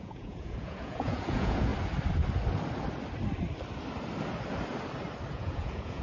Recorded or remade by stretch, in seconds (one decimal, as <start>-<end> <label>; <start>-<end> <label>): 0.0-1.7 remade; 1.7-5.3 recorded; 5.3-6.0 remade